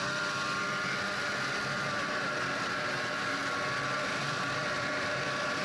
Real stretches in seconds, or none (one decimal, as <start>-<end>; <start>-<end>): 3.4-3.9